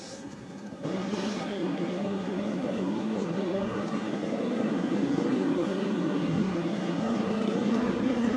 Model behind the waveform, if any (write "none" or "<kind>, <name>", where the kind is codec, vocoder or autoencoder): codec, SNAC